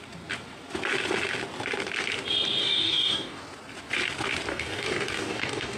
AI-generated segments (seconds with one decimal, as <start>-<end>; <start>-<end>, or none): 2.6-3.4; 4.5-5.8